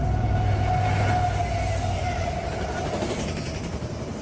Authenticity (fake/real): real